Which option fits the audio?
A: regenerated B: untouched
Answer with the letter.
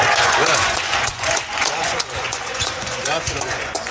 A